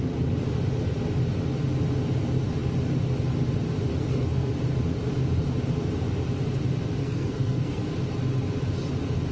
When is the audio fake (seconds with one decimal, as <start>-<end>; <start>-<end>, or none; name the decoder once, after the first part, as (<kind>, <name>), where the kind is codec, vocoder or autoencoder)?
3.9-4.5 (codec, SNAC); 7.0-7.8